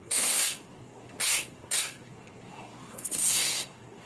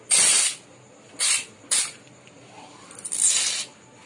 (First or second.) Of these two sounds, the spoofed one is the first